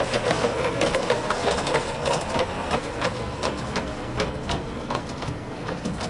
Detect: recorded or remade remade